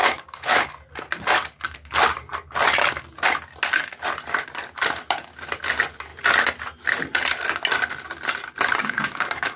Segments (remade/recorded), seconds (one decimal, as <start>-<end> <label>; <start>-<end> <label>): 0.0-0.7 remade; 0.7-8.8 recorded; 8.8-9.6 remade